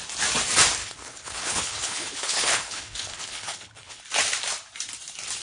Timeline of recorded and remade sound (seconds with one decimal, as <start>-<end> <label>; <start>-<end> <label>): 0.0-0.8 recorded; 0.8-4.0 remade; 4.0-5.4 recorded